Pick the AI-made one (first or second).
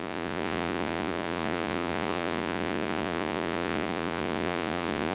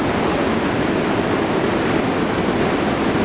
first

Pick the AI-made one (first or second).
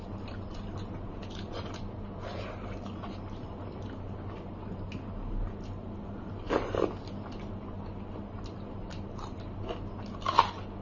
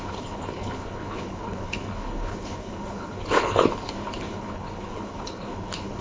second